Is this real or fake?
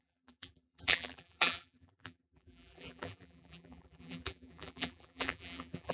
fake